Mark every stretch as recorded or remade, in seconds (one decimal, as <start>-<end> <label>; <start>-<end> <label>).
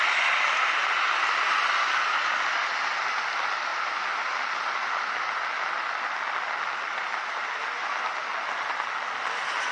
0.0-9.7 recorded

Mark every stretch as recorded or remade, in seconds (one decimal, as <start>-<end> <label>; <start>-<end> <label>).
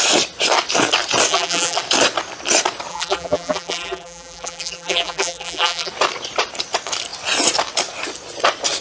0.0-1.3 recorded; 1.3-1.8 remade; 1.8-2.9 recorded; 2.9-5.9 remade; 5.9-8.8 recorded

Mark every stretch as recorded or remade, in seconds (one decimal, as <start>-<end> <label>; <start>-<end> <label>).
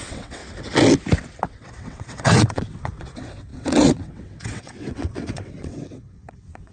0.0-0.4 remade; 0.4-1.4 recorded; 1.4-6.7 remade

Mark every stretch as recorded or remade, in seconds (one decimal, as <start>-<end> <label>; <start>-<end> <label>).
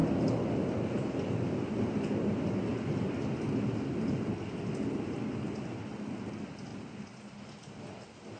0.0-2.7 recorded; 2.7-3.3 remade; 3.3-8.4 recorded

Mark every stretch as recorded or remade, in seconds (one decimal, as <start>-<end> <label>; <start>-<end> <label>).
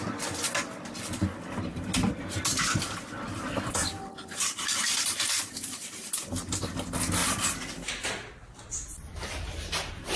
0.0-1.7 recorded; 1.7-2.4 remade; 2.4-3.8 recorded; 3.8-6.4 remade; 6.4-10.2 recorded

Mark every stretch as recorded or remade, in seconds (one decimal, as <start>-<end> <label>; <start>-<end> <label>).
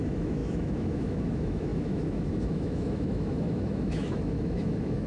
0.0-5.1 remade